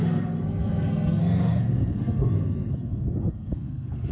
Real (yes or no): no